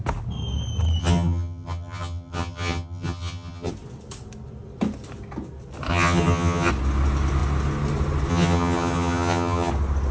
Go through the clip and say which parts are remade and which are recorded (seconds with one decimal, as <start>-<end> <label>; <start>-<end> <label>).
0.0-1.0 recorded; 1.0-3.7 remade; 3.7-5.9 recorded; 5.9-6.7 remade; 6.7-8.3 recorded; 8.3-9.7 remade; 9.7-10.1 recorded